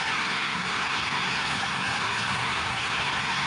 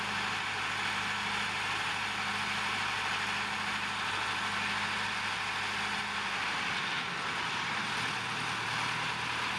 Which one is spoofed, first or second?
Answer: first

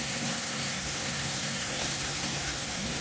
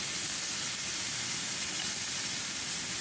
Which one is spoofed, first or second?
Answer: first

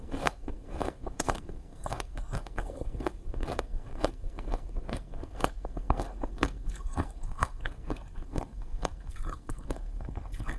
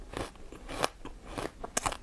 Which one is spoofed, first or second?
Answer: first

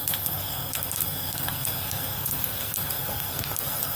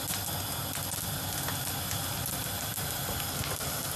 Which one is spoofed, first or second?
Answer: first